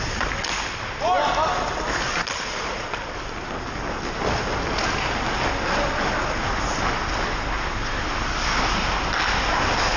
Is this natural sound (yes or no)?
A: yes